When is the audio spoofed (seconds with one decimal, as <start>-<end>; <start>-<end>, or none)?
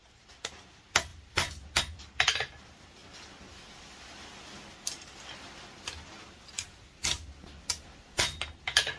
none